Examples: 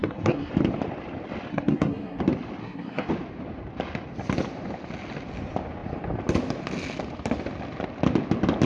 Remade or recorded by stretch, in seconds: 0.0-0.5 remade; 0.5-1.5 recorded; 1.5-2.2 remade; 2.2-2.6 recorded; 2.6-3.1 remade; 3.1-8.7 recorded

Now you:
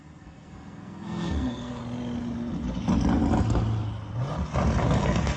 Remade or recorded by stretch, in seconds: 0.0-1.8 remade; 1.8-5.0 recorded; 5.0-5.4 remade

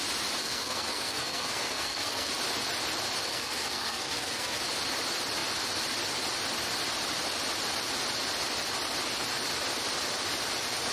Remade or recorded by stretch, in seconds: 0.0-0.4 recorded; 0.4-2.3 remade; 2.3-3.3 recorded; 3.3-4.6 remade; 4.6-10.9 recorded

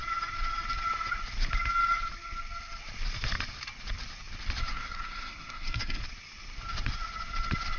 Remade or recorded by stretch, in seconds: 0.0-4.7 recorded; 4.7-6.0 remade; 6.0-7.8 recorded